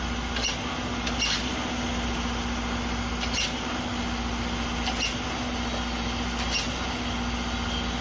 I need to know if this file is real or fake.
real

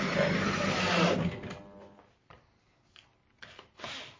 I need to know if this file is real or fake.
real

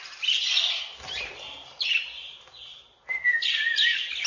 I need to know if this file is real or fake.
real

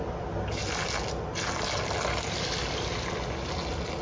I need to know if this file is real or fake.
real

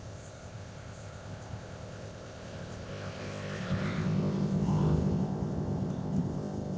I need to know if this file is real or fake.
fake